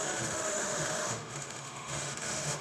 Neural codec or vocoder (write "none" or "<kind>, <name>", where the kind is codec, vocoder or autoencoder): autoencoder, DAC-VAE